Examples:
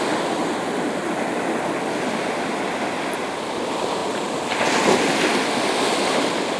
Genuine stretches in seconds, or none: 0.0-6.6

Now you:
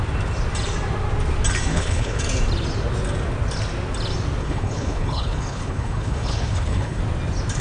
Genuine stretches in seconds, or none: 0.0-1.7; 2.2-4.4; 7.0-7.6

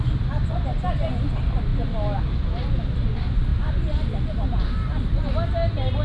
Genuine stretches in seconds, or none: 0.0-6.0

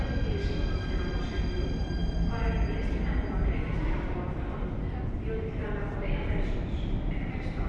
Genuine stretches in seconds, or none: 0.0-3.7

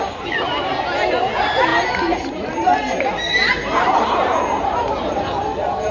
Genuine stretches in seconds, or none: 0.0-5.9

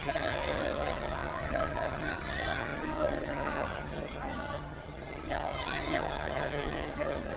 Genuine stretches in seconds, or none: none